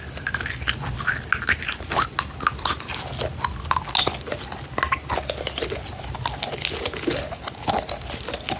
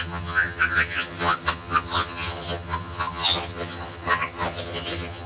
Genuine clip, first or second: first